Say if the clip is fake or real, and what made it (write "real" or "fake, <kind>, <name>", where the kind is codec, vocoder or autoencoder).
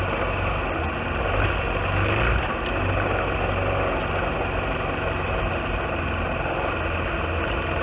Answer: real